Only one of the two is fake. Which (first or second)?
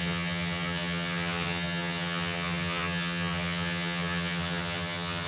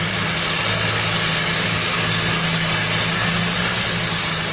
first